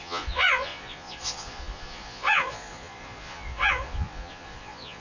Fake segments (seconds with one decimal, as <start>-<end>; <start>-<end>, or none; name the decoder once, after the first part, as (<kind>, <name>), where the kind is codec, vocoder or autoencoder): 0.0-5.0 (vocoder, Vocos)